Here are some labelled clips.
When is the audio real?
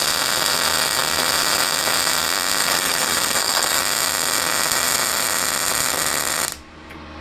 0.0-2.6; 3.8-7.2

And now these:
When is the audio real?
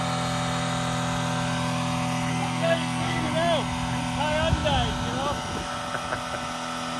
0.0-2.3; 3.3-7.0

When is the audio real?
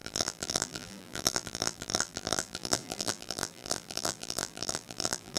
none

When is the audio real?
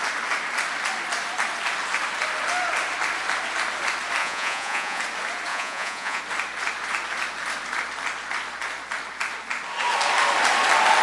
0.0-4.2; 5.0-5.5; 6.2-11.0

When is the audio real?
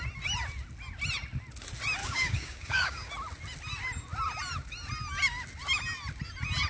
0.0-2.0; 3.1-6.7